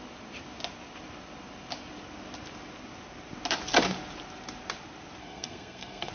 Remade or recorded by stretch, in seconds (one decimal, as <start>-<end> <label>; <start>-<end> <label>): 0.0-5.2 recorded; 5.2-6.1 remade